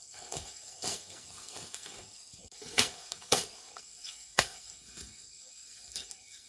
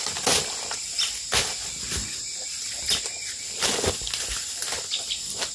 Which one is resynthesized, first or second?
first